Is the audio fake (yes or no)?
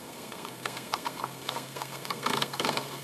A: yes